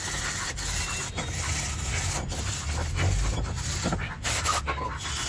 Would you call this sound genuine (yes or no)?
yes